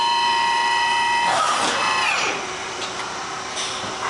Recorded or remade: remade